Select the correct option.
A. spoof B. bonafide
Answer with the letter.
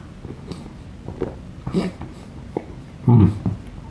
B